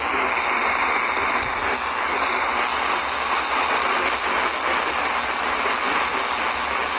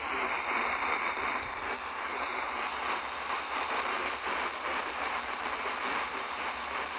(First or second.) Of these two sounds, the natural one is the first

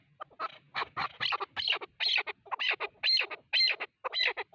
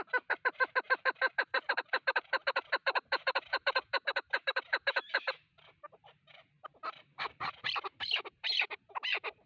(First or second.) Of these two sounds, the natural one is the first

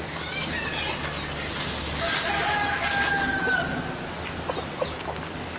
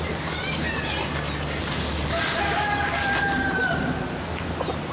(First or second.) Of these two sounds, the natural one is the first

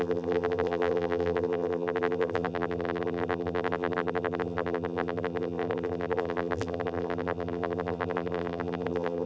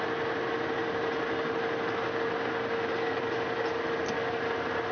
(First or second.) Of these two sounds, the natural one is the second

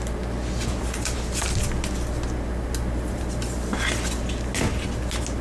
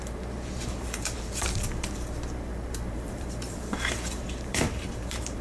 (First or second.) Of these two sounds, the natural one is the first